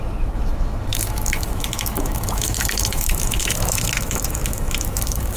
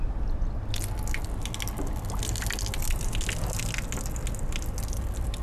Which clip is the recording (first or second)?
second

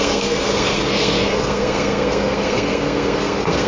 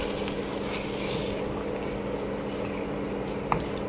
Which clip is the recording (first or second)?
second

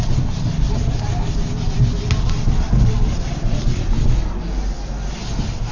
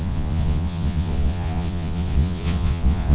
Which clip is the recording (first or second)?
first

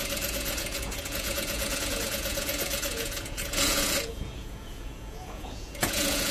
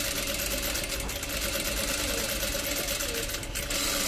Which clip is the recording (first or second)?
second